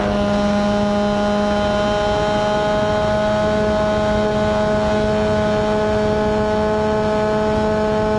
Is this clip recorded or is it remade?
recorded